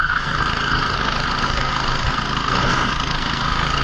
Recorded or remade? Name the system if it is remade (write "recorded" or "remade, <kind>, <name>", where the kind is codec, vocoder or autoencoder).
remade, codec, SNAC